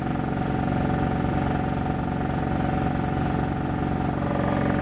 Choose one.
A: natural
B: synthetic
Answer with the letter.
A